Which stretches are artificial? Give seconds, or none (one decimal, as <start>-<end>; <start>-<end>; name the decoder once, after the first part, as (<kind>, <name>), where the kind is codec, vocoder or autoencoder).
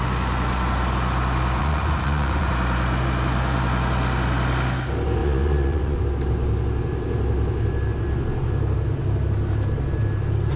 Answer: 1.6-2.5 (vocoder, Vocos); 5.2-6.0